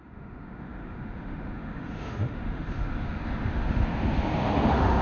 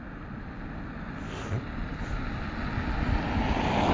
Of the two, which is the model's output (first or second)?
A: first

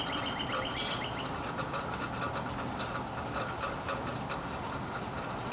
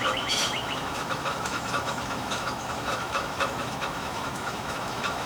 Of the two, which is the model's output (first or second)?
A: second